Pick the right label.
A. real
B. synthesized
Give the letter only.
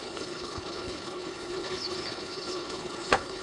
B